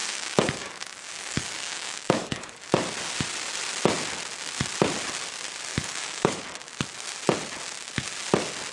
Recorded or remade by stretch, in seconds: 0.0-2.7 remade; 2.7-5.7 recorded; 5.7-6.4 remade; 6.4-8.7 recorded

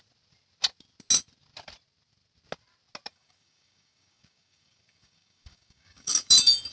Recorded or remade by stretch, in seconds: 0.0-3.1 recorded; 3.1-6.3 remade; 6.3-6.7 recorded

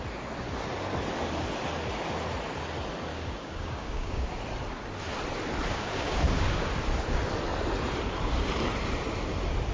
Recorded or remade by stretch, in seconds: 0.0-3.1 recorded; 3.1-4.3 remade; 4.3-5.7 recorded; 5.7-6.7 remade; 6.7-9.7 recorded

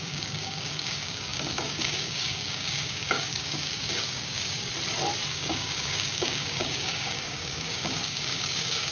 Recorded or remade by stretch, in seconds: 0.0-4.7 remade; 4.7-5.3 recorded; 5.3-8.9 remade

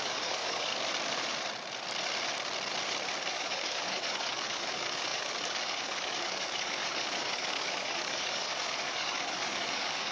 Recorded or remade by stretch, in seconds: 0.0-0.7 remade; 0.7-3.3 recorded; 3.3-10.1 remade

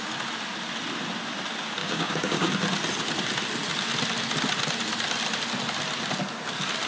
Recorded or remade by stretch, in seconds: 0.0-1.8 recorded; 1.8-2.5 remade; 2.5-6.9 recorded

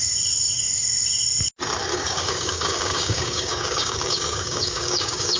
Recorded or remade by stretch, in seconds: 0.0-1.9 recorded; 1.9-5.4 remade